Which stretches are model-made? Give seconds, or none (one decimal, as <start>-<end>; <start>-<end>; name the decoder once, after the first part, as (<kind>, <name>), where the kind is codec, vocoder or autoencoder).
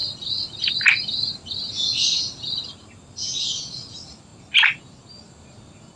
none